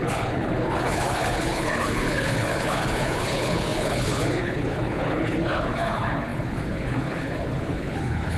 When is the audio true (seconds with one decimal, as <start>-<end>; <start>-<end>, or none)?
none